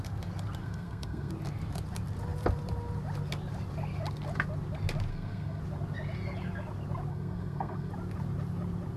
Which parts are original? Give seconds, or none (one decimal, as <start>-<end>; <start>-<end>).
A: 0.0-0.6; 1.3-5.1; 5.6-7.1; 7.9-9.0